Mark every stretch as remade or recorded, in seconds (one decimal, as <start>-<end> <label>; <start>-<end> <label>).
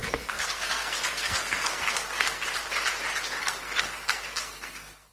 0.0-2.4 remade; 2.4-3.4 recorded; 3.4-5.1 remade